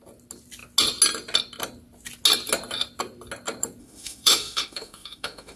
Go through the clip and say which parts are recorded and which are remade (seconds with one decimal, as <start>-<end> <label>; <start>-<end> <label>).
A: 0.0-3.8 recorded; 3.8-5.6 remade